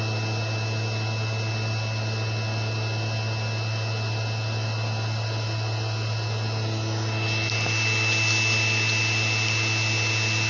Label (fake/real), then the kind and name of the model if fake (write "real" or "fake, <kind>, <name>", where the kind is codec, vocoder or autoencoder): real